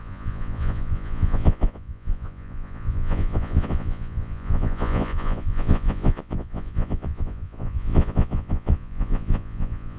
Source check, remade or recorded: remade